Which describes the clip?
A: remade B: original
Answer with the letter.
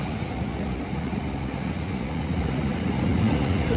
A